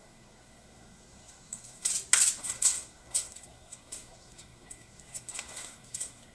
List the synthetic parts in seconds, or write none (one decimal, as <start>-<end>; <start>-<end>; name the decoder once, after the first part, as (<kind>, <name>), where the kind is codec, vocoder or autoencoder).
0.0-1.9 (codec, SNAC); 2.4-6.3